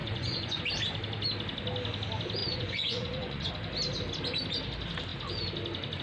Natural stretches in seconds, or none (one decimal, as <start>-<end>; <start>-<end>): 0.6-2.4; 3.5-6.0